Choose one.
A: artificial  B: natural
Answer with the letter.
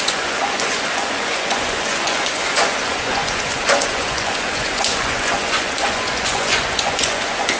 A